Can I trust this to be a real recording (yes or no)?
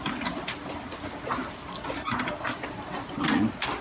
yes